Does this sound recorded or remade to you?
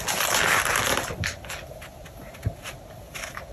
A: recorded